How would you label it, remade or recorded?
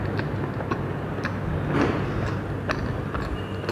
recorded